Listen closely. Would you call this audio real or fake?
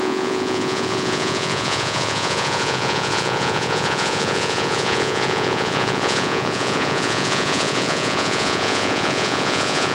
fake